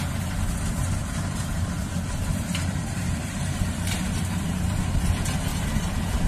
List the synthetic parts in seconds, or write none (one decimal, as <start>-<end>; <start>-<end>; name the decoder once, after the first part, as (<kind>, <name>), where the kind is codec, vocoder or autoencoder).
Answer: 1.0-4.8 (vocoder, BigVGAN v2); 5.5-6.3